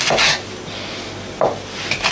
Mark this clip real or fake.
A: real